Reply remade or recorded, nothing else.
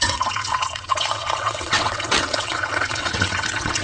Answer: remade